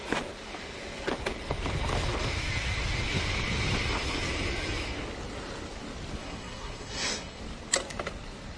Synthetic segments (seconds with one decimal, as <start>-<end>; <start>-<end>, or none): 6.2-7.4